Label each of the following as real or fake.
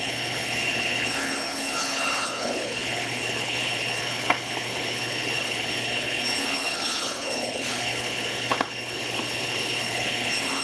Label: fake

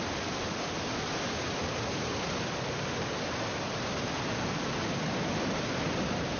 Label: real